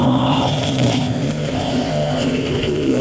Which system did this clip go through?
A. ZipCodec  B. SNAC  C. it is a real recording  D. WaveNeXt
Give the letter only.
A